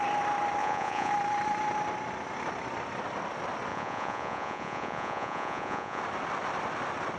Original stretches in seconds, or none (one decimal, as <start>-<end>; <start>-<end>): 0.0-0.6; 1.1-3.7; 6.0-7.2